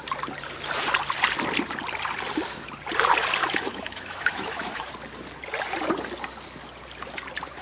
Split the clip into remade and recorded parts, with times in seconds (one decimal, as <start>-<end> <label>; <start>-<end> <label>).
0.0-3.4 recorded; 3.4-4.9 remade; 4.9-7.6 recorded